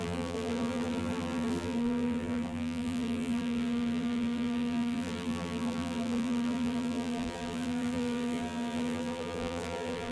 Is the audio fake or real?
fake